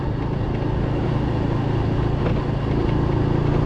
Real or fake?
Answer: real